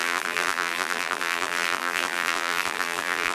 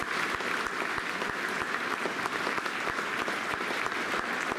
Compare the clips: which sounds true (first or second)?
second